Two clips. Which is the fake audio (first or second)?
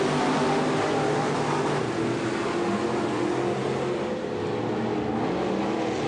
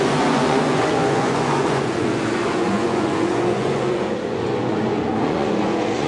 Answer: second